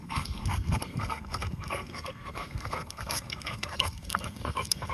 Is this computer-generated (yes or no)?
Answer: yes